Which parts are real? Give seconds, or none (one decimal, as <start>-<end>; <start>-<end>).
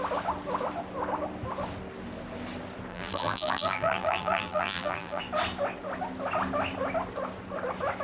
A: 0.0-2.9; 5.2-8.0